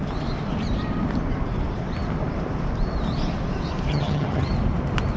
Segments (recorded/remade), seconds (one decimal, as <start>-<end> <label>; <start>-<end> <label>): 0.0-3.9 recorded; 3.9-4.5 remade; 4.5-5.2 recorded